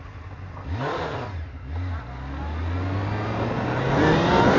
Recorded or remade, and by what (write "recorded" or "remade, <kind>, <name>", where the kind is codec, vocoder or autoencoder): recorded